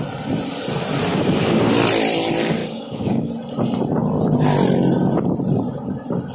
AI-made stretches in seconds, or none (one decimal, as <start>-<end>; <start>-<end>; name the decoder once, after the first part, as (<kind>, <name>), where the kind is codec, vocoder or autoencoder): 1.1-1.7 (codec, DAC); 2.6-3.3